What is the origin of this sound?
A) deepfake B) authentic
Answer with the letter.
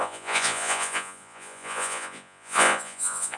A